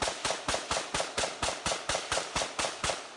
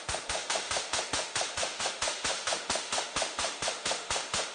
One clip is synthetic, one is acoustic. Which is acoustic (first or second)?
first